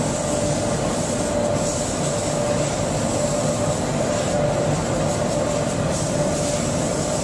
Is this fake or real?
real